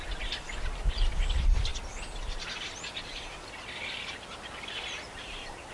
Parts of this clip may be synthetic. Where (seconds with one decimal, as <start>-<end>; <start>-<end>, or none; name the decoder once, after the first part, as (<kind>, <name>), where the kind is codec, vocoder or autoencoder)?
none